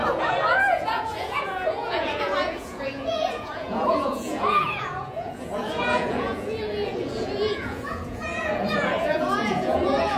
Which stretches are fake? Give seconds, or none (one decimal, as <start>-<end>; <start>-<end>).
0.0-10.2